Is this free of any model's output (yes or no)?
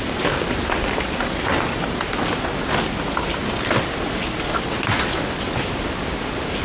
yes